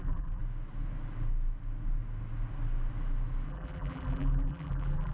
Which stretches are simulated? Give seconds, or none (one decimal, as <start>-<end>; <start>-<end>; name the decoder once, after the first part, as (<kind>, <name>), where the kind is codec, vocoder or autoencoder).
0.0-0.4 (vocoder, BigVGAN v2); 3.5-5.1